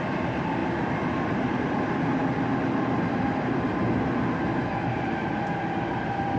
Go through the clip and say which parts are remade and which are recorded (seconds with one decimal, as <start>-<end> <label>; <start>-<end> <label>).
0.0-2.2 remade; 2.2-4.7 recorded; 4.7-6.4 remade